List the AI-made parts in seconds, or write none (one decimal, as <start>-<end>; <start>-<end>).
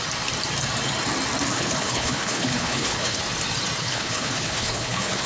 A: 1.5-3.2; 3.8-5.3